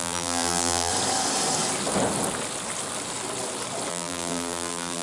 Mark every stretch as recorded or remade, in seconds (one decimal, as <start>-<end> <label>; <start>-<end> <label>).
0.0-0.9 remade; 0.9-3.9 recorded; 3.9-5.0 remade